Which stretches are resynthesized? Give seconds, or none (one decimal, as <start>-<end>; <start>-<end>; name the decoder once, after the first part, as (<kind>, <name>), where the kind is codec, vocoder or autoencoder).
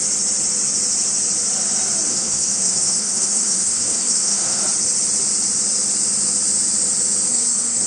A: 2.1-4.6 (codec, SNAC); 7.3-7.9